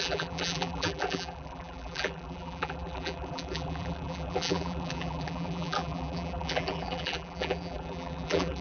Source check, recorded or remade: remade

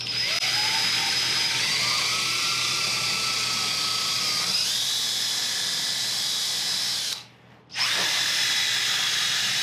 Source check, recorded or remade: recorded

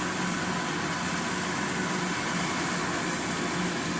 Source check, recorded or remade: recorded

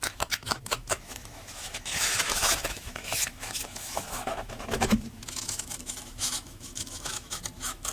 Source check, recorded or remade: remade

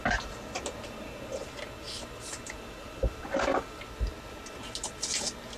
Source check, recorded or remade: recorded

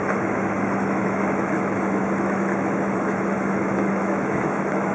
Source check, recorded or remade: remade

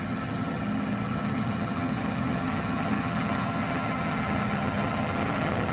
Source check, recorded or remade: remade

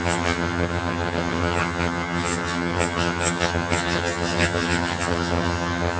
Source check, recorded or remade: remade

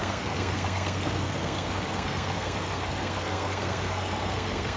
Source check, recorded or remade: remade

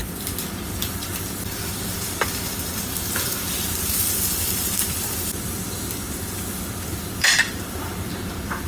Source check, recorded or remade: remade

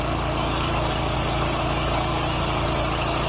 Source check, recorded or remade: remade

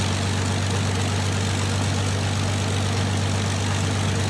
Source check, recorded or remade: recorded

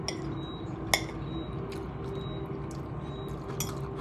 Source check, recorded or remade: recorded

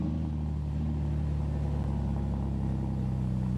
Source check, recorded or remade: recorded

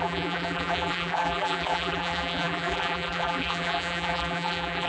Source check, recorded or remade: remade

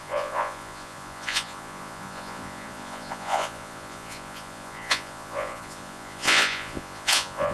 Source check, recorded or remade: remade